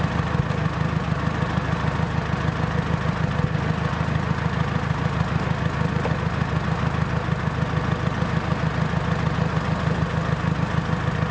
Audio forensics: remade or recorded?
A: recorded